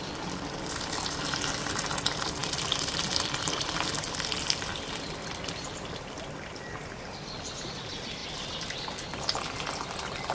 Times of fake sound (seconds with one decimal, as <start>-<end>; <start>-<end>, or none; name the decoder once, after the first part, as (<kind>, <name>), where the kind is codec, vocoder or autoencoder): none